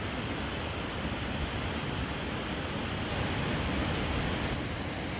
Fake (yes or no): no